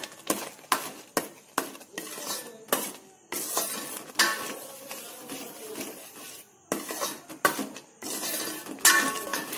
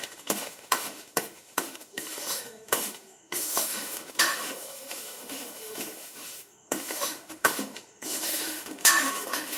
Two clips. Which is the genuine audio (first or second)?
first